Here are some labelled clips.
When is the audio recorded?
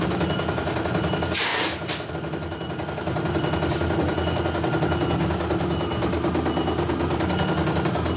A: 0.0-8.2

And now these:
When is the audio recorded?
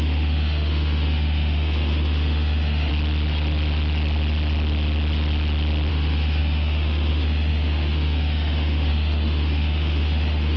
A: 2.9-5.9